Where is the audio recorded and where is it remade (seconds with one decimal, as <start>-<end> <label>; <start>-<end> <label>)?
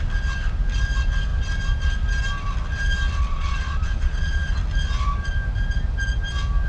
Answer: 0.0-3.3 recorded; 3.3-4.6 remade; 4.6-6.7 recorded